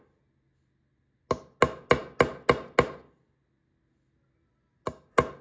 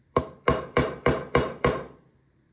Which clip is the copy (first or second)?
second